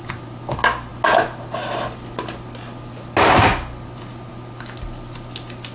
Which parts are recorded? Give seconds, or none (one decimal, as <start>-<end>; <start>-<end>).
0.0-5.7